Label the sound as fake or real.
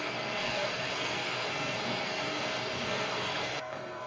fake